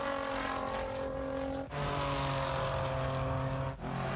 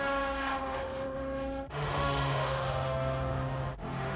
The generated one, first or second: second